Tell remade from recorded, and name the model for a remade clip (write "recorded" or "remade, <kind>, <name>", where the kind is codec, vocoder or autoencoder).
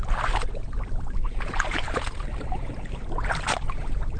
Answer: recorded